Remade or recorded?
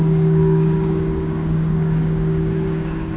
remade